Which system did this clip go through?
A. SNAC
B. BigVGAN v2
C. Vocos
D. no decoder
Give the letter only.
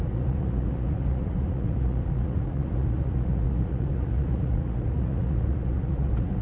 C